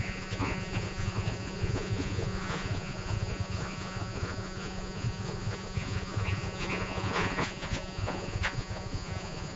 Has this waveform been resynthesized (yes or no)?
yes